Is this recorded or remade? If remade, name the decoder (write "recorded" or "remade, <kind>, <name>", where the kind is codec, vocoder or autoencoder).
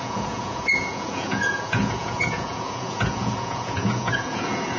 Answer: remade, vocoder, Vocos